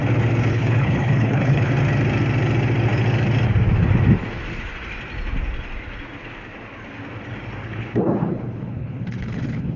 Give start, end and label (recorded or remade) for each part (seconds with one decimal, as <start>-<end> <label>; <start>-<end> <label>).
0.0-0.5 recorded; 0.5-1.7 remade; 1.7-7.6 recorded; 7.6-9.8 remade